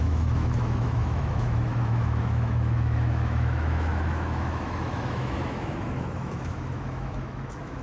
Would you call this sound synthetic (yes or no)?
yes